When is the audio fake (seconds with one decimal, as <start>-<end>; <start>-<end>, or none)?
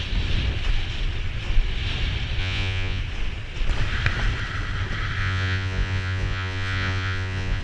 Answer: 2.4-3.0; 5.2-7.6